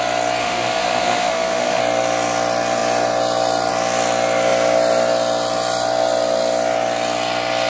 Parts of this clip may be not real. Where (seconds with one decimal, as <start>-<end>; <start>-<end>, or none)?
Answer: 0.4-1.8